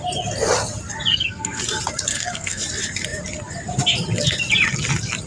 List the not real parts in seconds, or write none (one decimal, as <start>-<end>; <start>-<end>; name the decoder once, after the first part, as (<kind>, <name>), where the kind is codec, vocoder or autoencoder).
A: 1.1-1.6 (codec, SNAC); 2.1-2.6